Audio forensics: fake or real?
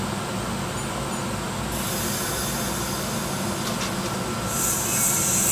real